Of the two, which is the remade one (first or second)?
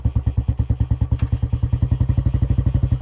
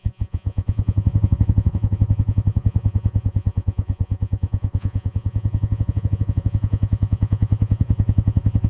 second